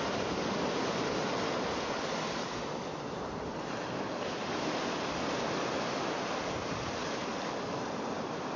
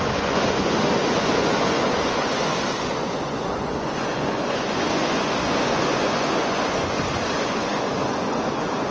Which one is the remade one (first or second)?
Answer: second